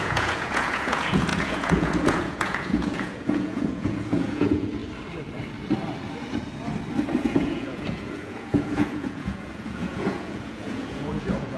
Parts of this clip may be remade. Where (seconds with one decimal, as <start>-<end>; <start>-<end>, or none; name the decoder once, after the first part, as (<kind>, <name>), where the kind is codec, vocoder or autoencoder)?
0.0-4.8 (vocoder, Vocos); 7.2-11.6